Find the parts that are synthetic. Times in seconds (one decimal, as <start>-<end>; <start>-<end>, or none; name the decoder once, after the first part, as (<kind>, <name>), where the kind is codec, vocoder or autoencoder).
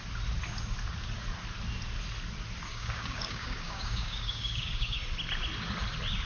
2.7-5.0 (codec, DAC)